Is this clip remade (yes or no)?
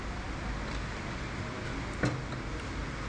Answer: no